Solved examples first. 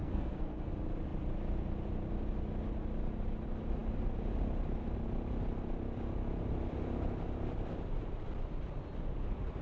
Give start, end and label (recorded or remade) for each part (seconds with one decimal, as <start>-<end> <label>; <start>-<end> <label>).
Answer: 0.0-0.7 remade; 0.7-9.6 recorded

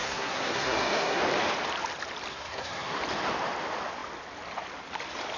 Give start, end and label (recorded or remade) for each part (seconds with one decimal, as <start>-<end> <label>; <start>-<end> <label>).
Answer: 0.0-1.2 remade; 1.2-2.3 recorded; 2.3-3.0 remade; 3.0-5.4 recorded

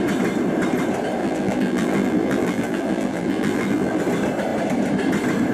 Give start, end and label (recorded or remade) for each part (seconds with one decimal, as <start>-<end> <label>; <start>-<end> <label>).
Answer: 0.0-1.2 recorded; 1.2-4.0 remade; 4.0-5.5 recorded